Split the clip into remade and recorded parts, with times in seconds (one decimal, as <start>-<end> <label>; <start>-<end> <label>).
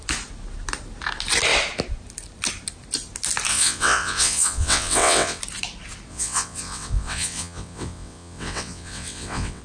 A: 0.0-3.5 recorded; 3.5-5.4 remade; 5.4-6.1 recorded; 6.1-9.6 remade